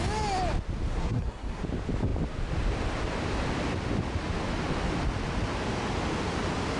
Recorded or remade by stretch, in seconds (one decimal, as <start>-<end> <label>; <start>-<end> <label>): 0.0-0.9 recorded; 0.9-1.6 remade; 1.6-6.8 recorded